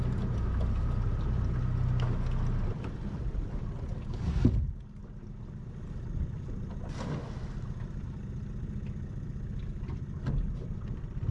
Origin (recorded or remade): recorded